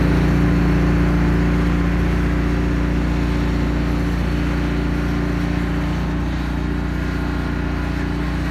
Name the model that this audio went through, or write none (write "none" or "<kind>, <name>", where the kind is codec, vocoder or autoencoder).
none